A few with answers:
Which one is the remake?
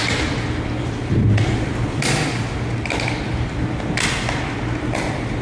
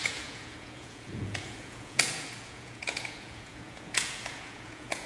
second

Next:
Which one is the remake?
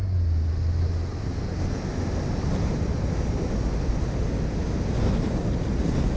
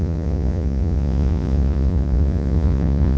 second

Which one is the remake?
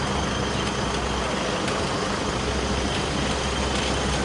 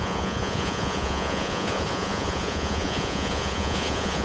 second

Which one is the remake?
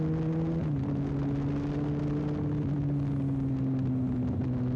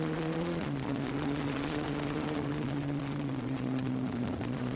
second